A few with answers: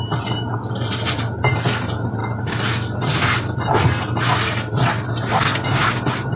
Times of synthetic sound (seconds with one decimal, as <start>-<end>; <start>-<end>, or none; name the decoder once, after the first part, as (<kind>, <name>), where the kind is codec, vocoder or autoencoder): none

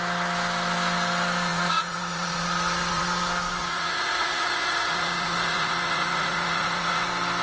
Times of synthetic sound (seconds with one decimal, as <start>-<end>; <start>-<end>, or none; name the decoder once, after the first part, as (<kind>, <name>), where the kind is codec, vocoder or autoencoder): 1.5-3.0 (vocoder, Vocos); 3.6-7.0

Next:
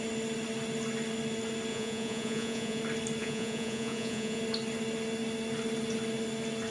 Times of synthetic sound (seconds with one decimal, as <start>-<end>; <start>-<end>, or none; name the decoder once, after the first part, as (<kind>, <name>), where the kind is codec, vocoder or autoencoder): 1.7-2.8 (vocoder, Vocos); 3.2-4.4

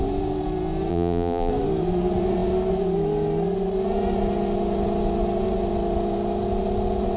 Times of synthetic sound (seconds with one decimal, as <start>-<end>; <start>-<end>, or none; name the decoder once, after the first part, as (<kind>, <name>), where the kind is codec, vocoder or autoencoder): 0.9-1.5 (vocoder, BigVGAN v2)